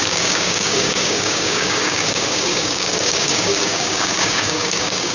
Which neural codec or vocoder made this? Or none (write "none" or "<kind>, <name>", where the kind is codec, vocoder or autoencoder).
codec, DAC